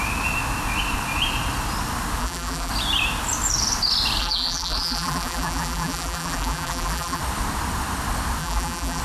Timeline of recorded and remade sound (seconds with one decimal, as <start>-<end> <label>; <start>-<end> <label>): 0.0-2.2 recorded; 2.2-2.7 remade; 2.7-4.2 recorded; 4.2-7.2 remade; 7.2-8.4 recorded; 8.4-9.0 remade